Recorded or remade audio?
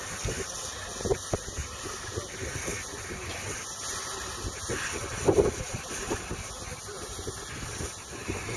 recorded